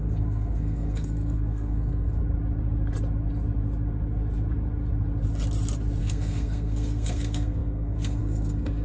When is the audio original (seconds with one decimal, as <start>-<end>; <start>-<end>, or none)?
2.2-6.0